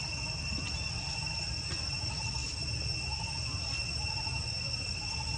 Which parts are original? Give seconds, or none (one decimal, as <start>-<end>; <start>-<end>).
0.0-5.4